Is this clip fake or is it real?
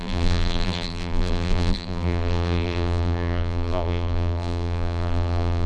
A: fake